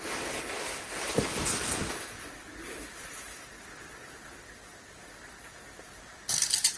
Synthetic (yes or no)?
no